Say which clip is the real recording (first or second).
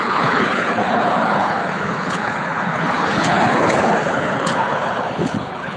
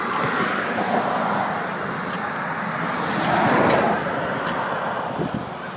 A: second